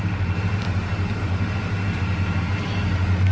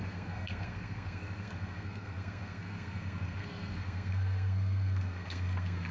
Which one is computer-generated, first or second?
second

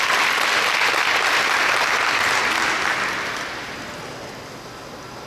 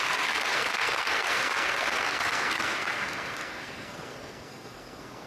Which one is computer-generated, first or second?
second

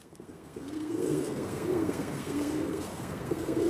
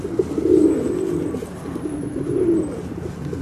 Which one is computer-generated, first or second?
first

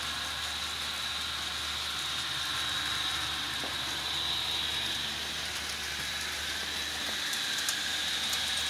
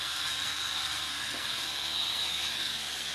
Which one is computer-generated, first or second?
second